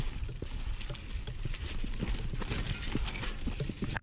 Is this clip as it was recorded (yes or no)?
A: yes